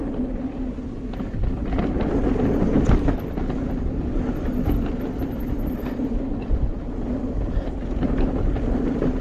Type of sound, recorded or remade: remade